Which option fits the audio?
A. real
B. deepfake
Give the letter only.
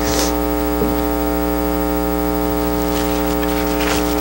A